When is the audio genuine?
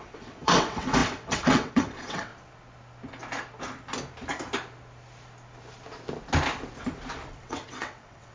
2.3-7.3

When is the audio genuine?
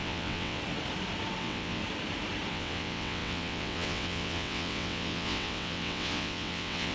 0.6-1.4; 1.8-2.5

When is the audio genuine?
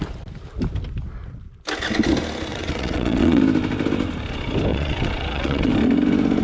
0.0-2.5; 3.4-4.7; 5.7-6.4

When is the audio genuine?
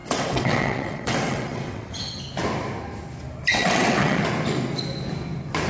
2.2-3.5; 4.2-5.7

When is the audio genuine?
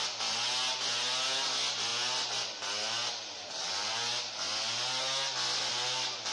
0.0-6.3